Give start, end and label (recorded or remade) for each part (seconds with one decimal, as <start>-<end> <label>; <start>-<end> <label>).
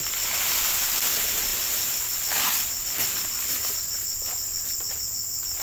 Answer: 0.0-5.6 recorded